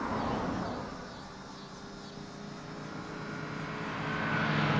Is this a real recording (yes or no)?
yes